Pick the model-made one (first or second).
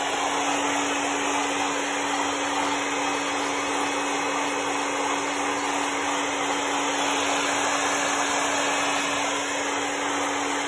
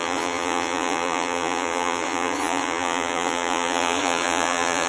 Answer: second